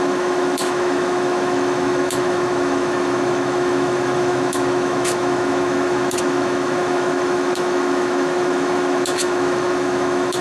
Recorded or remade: remade